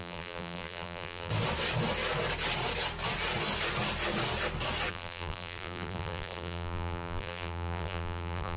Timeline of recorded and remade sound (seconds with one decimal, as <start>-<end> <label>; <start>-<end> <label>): 0.0-1.3 remade; 1.3-4.9 recorded; 4.9-8.6 remade